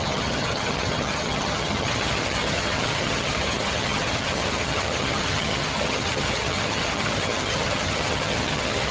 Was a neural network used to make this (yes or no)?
yes